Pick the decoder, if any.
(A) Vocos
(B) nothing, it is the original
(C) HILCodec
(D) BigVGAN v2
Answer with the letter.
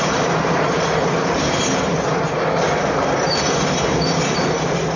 B